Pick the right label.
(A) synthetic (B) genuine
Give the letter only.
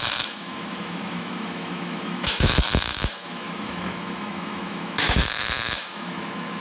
A